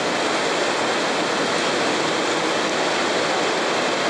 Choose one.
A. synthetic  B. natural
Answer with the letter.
B